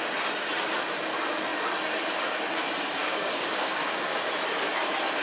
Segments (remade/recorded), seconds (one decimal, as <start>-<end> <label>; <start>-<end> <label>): 0.0-3.0 recorded; 3.0-4.0 remade; 4.0-5.2 recorded